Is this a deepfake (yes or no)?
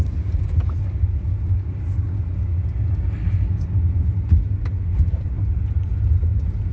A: no